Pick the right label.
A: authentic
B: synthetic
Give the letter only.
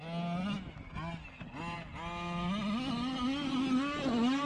A